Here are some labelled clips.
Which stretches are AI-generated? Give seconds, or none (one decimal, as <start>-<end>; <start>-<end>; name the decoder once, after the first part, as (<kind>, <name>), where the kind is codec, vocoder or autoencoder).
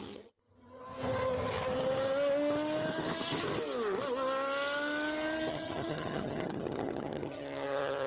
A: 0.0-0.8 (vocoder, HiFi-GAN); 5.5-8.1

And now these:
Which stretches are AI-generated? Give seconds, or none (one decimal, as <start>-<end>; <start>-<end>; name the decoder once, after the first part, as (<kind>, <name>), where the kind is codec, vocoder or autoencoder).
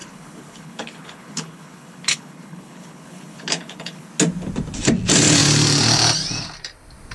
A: 0.0-4.1 (codec, HILCodec)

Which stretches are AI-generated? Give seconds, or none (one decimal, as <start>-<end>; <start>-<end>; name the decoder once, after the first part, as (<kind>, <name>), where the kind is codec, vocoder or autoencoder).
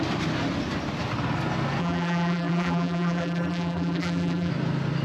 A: 1.8-4.5 (vocoder, BigVGAN v2)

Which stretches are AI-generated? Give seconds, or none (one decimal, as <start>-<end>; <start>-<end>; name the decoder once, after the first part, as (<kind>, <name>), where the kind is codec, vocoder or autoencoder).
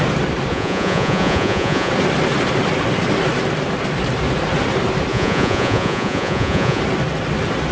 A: 0.5-1.9 (vocoder, Vocos); 5.1-6.8